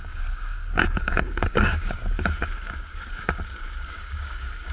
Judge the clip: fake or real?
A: fake